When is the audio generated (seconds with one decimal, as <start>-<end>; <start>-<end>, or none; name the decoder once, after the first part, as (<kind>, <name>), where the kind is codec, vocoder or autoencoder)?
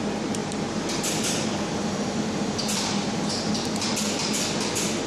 0.4-3.5 (vocoder, BigVGAN v2)